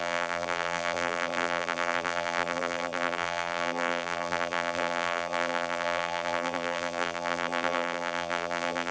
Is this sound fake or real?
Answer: fake